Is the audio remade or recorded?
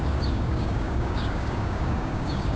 remade